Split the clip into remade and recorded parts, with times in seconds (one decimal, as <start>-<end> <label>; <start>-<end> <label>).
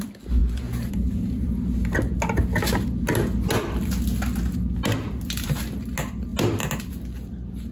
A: 0.0-7.7 recorded